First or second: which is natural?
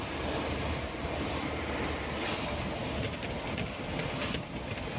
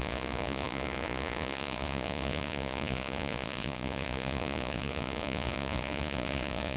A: first